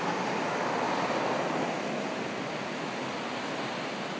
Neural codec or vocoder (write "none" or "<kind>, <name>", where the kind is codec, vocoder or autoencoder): none